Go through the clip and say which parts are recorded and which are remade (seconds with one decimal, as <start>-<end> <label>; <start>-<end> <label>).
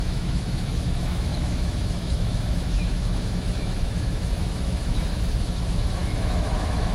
0.0-6.9 remade